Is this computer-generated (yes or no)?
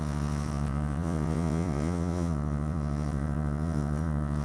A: yes